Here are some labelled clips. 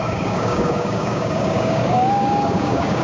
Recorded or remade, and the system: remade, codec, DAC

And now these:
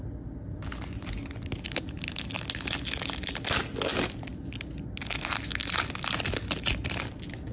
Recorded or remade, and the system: recorded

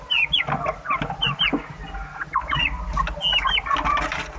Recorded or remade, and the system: recorded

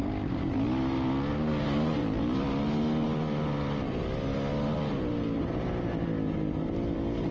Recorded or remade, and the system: recorded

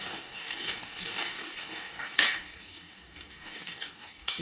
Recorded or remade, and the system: remade, codec, DAC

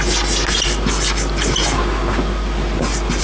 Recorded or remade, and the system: recorded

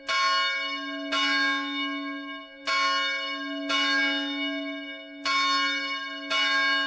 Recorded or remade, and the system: recorded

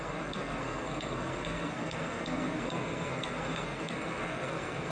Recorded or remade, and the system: remade, codec, SNAC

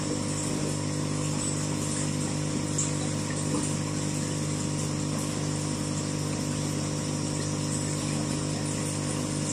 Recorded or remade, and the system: recorded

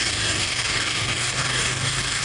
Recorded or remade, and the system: remade, codec, DAC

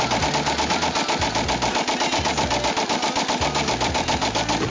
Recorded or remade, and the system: recorded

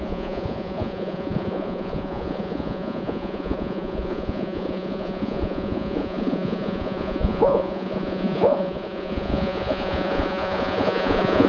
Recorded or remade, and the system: remade, vocoder, Vocos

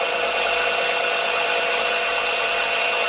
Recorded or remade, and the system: recorded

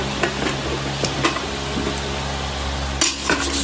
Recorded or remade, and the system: recorded